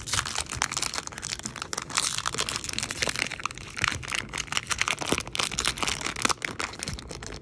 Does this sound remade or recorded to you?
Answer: recorded